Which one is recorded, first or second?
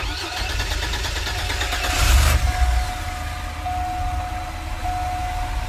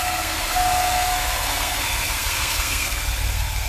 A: first